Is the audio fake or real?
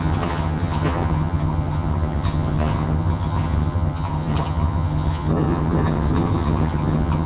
fake